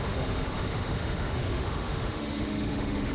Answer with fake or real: fake